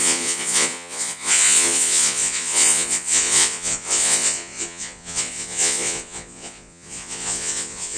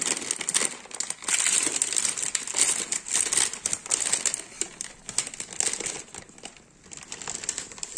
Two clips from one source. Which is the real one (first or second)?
second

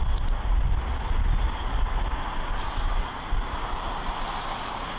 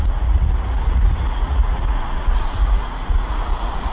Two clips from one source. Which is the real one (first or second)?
first